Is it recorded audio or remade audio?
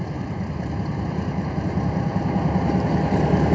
recorded